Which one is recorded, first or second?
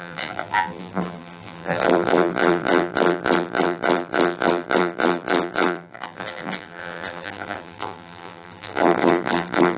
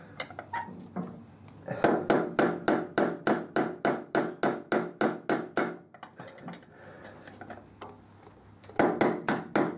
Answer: second